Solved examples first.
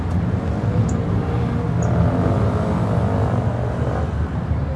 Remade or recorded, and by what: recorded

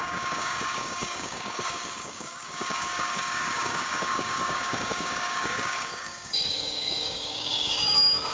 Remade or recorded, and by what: remade, codec, DAC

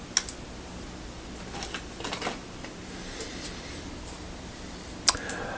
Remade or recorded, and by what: recorded